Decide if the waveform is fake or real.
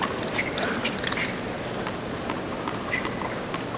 real